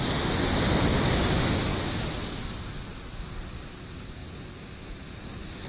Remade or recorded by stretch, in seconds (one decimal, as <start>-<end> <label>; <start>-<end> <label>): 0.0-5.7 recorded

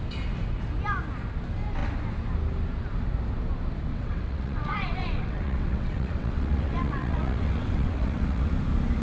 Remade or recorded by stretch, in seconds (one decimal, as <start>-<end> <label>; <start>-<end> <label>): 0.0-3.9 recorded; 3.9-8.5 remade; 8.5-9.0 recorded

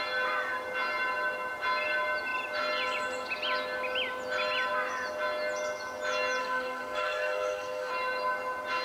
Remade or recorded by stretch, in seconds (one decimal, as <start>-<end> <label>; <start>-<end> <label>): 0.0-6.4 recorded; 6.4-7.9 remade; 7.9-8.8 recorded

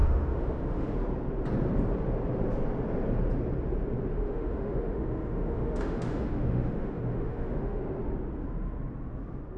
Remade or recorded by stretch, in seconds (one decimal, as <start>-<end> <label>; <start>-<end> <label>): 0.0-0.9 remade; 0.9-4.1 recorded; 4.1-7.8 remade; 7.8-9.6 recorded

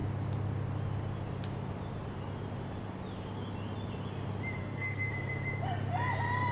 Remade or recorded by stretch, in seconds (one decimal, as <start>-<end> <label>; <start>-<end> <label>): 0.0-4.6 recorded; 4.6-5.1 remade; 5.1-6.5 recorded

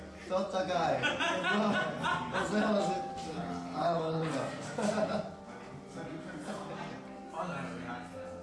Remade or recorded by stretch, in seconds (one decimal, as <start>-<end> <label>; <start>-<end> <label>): 0.0-3.3 recorded; 3.3-4.3 remade; 4.3-8.4 recorded

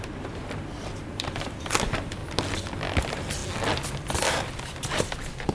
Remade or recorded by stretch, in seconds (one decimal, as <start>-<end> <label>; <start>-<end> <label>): 0.0-2.2 remade; 2.2-3.0 recorded; 3.0-3.4 remade; 3.4-4.9 recorded; 4.9-5.5 remade